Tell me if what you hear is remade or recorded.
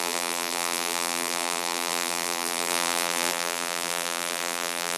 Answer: remade